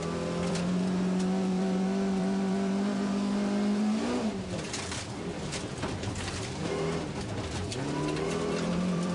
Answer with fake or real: fake